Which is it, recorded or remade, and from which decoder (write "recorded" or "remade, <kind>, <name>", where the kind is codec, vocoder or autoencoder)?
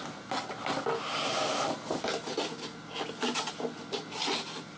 recorded